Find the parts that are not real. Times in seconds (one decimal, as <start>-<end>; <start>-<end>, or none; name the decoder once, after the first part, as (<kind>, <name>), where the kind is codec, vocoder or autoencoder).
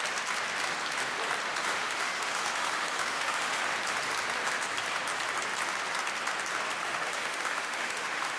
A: 1.7-3.6 (autoencoder, DAC-VAE); 6.8-8.4